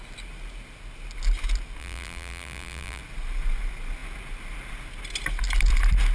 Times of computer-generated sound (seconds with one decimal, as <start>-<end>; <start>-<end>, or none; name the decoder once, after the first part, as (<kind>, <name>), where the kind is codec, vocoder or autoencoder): 1.8-3.0 (vocoder, BigVGAN v2)